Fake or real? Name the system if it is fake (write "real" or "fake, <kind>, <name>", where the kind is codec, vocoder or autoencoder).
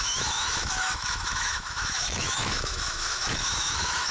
fake, autoencoder, DAC-VAE